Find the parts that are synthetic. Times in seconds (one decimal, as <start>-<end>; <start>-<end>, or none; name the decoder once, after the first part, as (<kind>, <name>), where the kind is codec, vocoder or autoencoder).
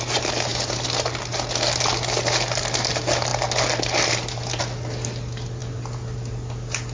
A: none